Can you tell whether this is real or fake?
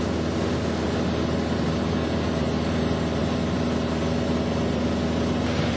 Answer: real